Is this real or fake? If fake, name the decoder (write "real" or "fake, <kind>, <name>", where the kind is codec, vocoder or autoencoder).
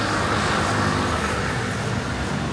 real